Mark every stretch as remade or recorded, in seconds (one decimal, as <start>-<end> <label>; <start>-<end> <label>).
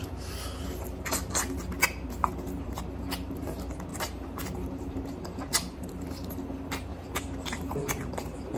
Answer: 0.0-2.2 recorded; 2.2-2.8 remade; 2.8-3.9 recorded; 3.9-5.9 remade; 5.9-6.9 recorded; 6.9-8.6 remade